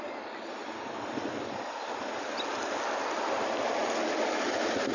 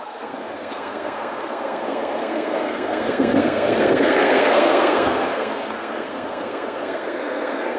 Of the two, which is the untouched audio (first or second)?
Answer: first